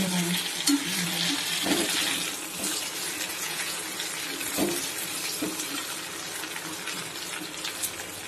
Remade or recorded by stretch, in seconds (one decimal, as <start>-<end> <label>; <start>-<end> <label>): 0.0-3.3 recorded; 3.3-3.8 remade; 3.8-8.3 recorded